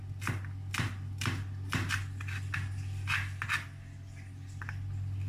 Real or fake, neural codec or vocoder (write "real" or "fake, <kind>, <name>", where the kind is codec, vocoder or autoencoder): real